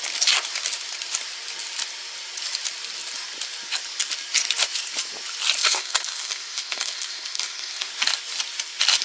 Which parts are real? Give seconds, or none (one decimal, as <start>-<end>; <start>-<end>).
0.0-5.6; 7.9-9.0